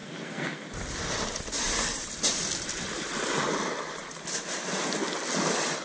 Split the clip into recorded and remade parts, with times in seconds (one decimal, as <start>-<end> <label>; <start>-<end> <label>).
0.0-0.7 remade; 0.7-5.8 recorded